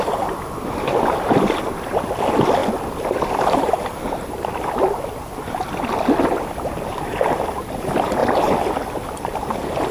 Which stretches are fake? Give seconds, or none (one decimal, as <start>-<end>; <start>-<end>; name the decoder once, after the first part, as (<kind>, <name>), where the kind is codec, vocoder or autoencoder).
0.0-2.6 (vocoder, BigVGAN v2); 3.3-8.2